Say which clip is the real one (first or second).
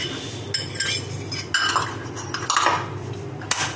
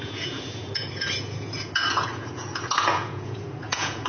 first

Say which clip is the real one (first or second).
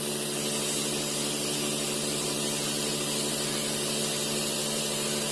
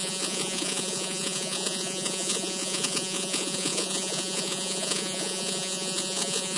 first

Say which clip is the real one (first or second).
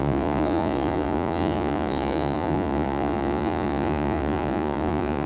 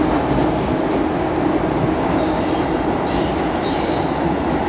second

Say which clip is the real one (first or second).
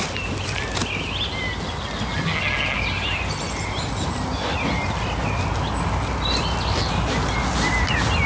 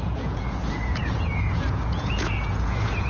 first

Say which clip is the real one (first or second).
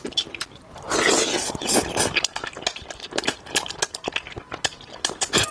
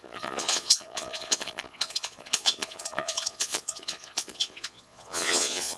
first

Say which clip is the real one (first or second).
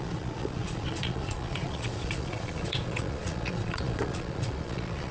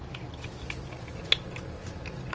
second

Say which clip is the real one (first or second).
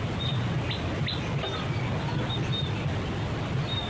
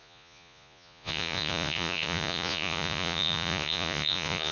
first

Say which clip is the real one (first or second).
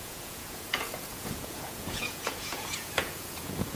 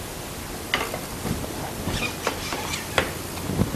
second